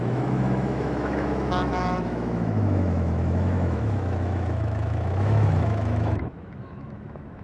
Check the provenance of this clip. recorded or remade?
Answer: remade